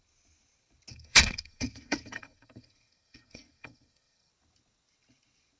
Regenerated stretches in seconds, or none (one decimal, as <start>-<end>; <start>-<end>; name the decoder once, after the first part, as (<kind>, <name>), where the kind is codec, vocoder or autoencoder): 0.9-4.3 (codec, SNAC)

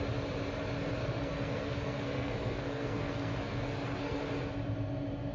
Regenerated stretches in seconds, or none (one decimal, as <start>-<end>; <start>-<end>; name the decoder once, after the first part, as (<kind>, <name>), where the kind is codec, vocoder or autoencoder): 1.0-4.2 (codec, SNAC)

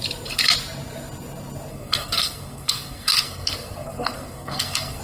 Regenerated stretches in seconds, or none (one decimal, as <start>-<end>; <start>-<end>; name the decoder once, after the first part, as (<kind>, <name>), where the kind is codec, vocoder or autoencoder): 1.7-5.0 (codec, SNAC)

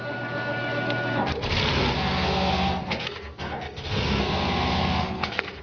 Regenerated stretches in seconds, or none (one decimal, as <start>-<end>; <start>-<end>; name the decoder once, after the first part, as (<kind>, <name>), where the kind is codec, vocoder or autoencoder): 1.8-5.6 (codec, SNAC)

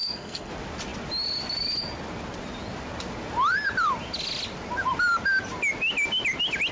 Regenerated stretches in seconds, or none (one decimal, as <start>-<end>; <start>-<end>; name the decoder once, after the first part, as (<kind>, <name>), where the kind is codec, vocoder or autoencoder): 0.0-0.5 (codec, SNAC)

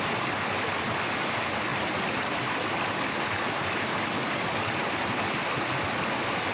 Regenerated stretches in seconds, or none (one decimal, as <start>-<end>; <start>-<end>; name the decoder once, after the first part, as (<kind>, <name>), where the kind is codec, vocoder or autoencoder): none

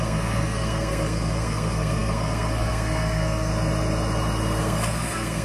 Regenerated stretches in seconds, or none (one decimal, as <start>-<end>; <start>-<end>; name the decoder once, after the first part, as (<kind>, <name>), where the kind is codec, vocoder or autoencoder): 0.0-3.5 (codec, SNAC); 4.6-5.4